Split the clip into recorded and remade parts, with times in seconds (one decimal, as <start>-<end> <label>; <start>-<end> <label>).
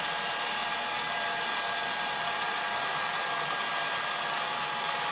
0.0-5.1 recorded